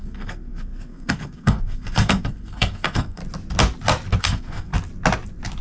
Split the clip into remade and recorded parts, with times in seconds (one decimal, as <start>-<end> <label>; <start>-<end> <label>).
0.0-3.2 remade; 3.2-4.2 recorded; 4.2-4.7 remade; 4.7-5.6 recorded